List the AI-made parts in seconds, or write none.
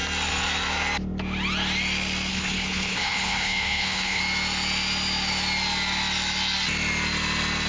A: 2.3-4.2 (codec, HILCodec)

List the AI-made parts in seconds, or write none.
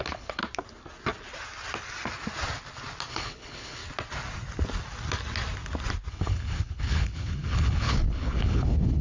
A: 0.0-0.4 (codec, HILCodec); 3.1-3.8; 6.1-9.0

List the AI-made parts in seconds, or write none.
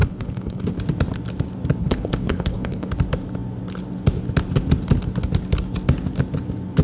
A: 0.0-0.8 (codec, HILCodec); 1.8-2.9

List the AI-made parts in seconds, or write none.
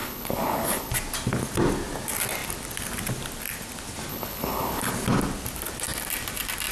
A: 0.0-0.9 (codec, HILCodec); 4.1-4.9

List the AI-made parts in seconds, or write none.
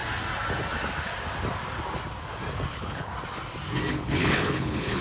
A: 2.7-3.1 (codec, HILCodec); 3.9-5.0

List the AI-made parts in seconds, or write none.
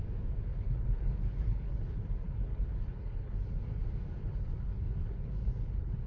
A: 0.5-3.8 (codec, HILCodec); 4.2-6.1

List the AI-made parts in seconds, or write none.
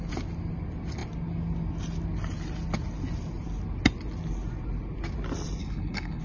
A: 5.6-6.2 (codec, HILCodec)